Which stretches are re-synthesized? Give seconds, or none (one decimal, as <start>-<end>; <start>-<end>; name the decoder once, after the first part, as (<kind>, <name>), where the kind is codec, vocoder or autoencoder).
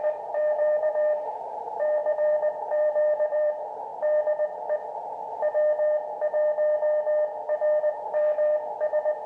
0.0-3.9 (vocoder, BigVGAN v2); 7.8-9.3